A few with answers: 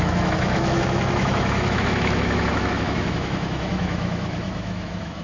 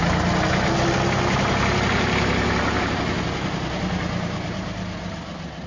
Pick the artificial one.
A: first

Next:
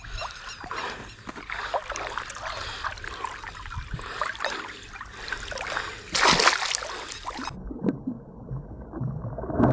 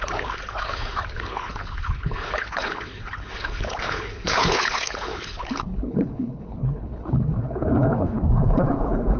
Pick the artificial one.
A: second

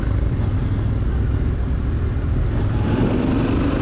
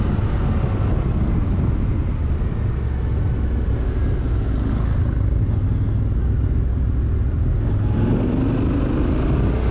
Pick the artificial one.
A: first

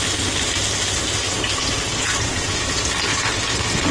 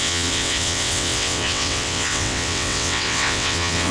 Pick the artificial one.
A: second